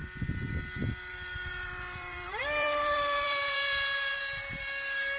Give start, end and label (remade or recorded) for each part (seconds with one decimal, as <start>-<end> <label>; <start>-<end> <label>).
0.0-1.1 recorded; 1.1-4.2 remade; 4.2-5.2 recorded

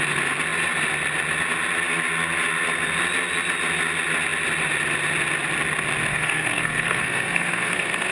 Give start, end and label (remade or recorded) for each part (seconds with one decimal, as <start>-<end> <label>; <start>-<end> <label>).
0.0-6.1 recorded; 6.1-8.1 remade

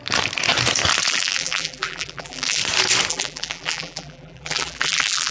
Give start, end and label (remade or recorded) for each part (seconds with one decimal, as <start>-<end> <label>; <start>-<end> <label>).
0.0-1.1 recorded; 1.1-2.6 remade; 2.6-3.1 recorded; 3.1-5.3 remade